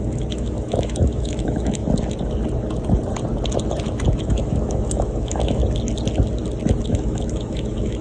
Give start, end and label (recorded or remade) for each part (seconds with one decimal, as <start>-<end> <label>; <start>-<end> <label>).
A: 0.0-1.8 remade; 1.8-4.2 recorded; 4.2-5.6 remade; 5.6-6.8 recorded; 6.8-8.0 remade